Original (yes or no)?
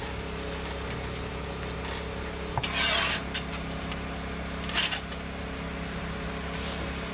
yes